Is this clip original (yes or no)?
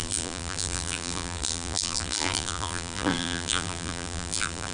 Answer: no